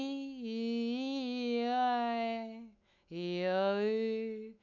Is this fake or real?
fake